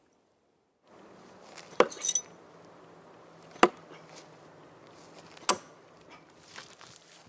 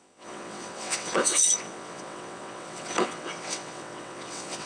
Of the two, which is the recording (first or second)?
first